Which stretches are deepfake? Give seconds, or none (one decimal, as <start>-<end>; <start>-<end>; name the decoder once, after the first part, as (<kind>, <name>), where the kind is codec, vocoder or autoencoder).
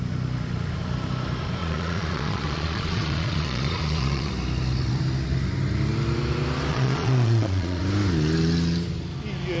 1.6-4.3 (vocoder, Vocos); 6.7-7.8